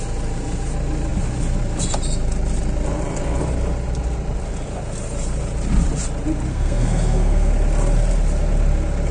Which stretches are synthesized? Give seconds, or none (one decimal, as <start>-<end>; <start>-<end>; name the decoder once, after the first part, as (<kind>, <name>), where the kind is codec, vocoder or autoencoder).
6.5-7.5 (codec, SNAC)